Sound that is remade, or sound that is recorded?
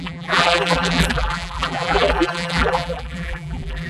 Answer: remade